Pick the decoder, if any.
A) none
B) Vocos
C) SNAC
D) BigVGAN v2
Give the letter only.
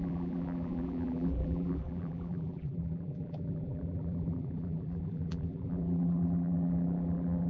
D